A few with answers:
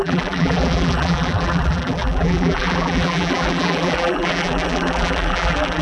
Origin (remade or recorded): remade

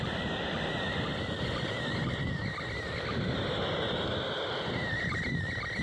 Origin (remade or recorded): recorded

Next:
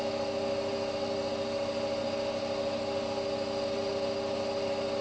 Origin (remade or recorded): recorded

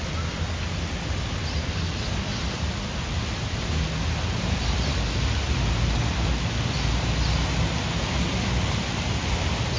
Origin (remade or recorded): recorded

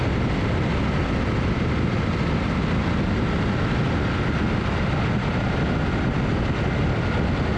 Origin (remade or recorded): recorded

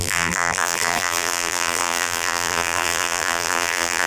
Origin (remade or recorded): remade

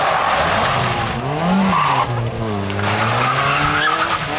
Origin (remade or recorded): recorded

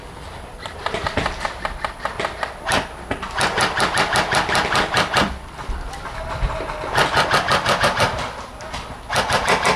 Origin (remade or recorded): recorded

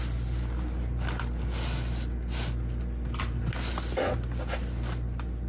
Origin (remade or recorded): recorded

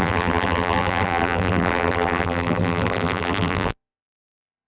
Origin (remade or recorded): remade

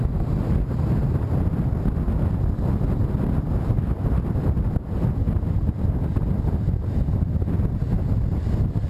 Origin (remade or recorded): recorded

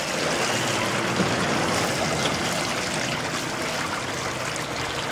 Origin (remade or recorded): recorded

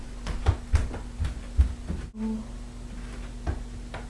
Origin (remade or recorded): recorded